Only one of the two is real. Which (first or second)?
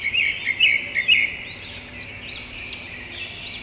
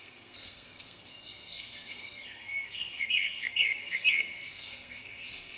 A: first